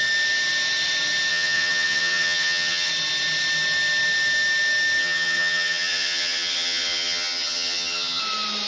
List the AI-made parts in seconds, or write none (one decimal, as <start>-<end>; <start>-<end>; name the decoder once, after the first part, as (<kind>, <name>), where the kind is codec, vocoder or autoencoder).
1.3-2.9 (vocoder, HiFi-GAN); 5.0-8.2